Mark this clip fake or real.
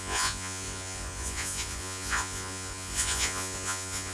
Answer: fake